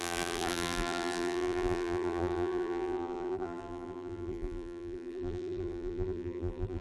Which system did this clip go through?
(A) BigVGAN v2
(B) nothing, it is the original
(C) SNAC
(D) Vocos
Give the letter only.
A